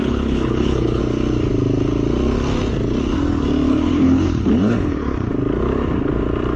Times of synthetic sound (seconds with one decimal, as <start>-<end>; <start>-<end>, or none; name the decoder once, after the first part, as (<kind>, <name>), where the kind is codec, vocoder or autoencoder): 0.0-1.0 (codec, HILCodec); 3.7-5.3